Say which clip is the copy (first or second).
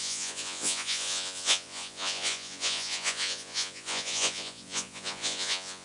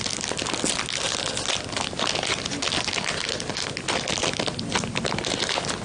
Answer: first